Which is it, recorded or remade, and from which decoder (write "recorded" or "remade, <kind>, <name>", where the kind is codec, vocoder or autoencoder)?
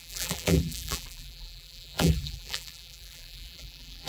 remade, vocoder, BigVGAN v2